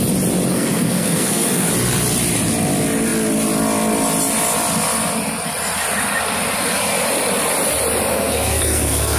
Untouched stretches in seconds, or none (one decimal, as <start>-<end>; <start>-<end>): 0.0-0.5; 1.7-8.1